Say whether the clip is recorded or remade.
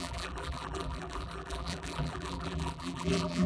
remade